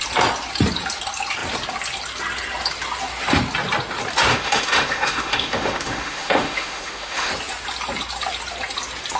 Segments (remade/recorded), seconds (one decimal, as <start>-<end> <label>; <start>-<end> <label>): 0.0-4.3 recorded; 4.3-7.3 remade; 7.3-9.2 recorded